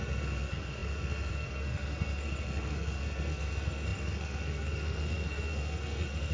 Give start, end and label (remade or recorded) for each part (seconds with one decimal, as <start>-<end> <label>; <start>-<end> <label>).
0.0-6.3 remade